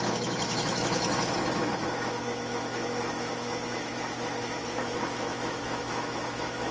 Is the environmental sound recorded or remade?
remade